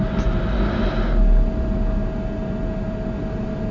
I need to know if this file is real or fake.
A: real